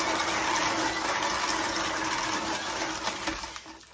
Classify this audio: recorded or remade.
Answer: recorded